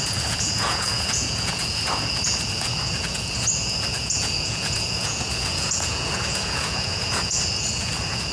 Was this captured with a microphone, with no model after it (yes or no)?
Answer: no